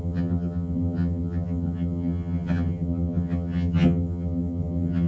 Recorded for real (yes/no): no